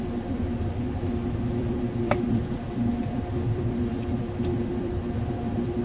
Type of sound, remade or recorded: remade